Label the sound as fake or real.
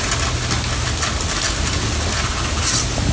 real